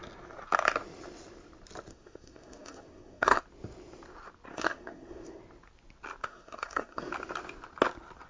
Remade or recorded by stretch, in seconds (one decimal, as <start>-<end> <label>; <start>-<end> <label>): 0.0-1.9 recorded; 1.9-3.4 remade; 3.4-4.5 recorded; 4.5-5.4 remade; 5.4-6.2 recorded; 6.2-7.1 remade; 7.1-8.3 recorded